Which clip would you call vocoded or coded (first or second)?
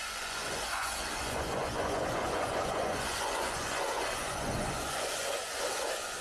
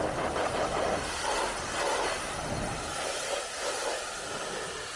first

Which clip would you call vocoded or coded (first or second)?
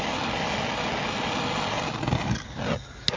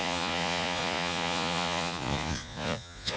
second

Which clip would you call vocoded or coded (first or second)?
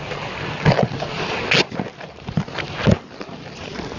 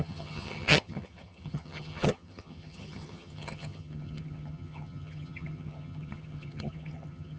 second